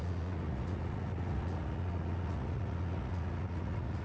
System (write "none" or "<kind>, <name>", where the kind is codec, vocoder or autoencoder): vocoder, Vocos